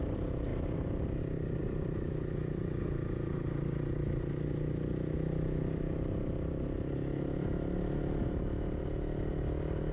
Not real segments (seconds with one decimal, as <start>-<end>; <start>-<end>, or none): none